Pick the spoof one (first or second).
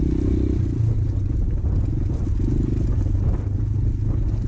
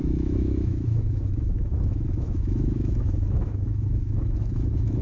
second